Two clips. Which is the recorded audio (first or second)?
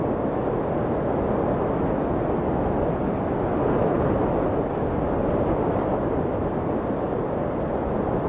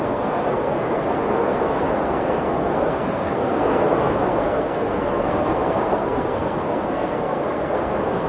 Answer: first